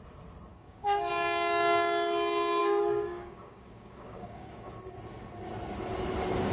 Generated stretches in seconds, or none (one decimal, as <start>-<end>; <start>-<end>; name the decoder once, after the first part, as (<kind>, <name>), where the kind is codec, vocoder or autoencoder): 0.5-1.1 (codec, DAC); 2.6-4.7

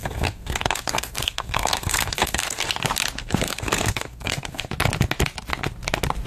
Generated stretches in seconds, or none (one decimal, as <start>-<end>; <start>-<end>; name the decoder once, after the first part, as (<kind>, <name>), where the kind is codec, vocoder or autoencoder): 0.0-2.7 (codec, SNAC); 3.2-4.7